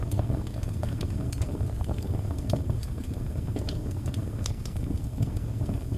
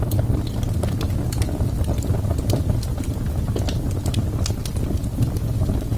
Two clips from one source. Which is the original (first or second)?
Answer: second